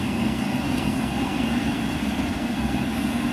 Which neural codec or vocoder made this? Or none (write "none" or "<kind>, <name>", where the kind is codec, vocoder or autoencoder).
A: codec, SNAC